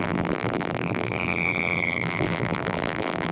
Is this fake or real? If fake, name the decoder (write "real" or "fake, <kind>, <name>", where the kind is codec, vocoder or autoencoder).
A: fake, vocoder, BigVGAN v2